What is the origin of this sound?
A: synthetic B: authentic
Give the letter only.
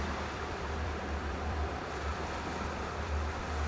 A